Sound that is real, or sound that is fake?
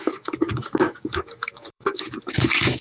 fake